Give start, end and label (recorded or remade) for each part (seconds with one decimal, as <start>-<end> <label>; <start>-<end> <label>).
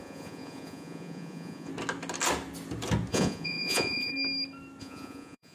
0.0-1.7 remade; 1.7-3.1 recorded; 3.1-4.1 remade; 4.1-4.8 recorded; 4.8-5.5 remade